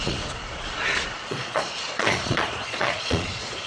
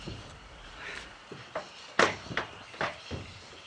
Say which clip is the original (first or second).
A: second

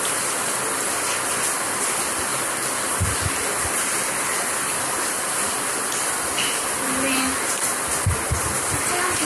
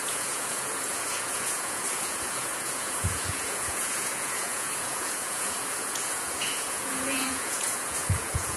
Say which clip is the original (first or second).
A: first